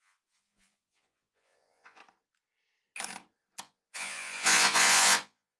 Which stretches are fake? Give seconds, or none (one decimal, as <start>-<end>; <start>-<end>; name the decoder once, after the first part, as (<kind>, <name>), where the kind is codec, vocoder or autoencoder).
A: 0.0-2.0 (vocoder, Vocos); 3.6-5.6